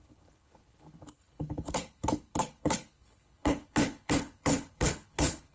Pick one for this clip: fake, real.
fake